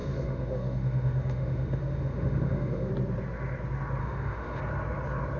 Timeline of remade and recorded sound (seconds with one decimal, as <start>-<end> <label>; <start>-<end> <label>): 0.0-2.9 remade; 2.9-4.0 recorded; 4.0-4.6 remade; 4.6-5.4 recorded